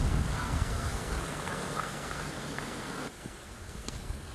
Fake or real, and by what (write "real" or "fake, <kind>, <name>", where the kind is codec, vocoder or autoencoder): fake, codec, SNAC